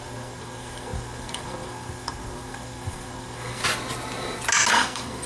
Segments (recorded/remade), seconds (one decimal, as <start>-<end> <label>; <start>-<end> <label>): 0.0-3.6 remade; 3.6-4.7 recorded; 4.7-5.3 remade